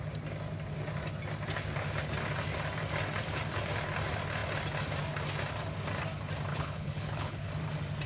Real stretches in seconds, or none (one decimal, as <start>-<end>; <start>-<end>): 0.0-6.5; 7.5-8.1